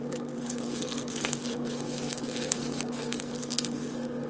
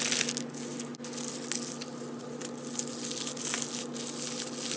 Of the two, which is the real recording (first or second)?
second